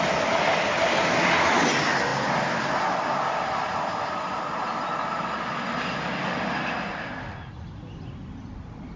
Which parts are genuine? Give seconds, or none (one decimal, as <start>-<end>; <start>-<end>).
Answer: 0.0-9.0